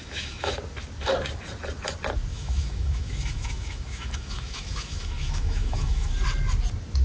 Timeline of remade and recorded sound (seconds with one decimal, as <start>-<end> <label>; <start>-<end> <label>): 0.0-0.5 remade; 0.5-2.3 recorded; 2.3-6.1 remade; 6.1-7.0 recorded